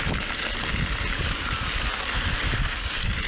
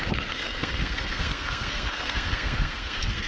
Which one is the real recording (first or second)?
first